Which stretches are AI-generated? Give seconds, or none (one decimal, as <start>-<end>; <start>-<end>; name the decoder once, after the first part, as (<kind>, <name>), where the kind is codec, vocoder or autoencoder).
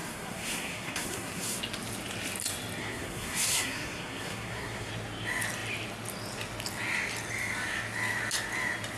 0.0-1.6 (codec, SNAC); 2.8-4.9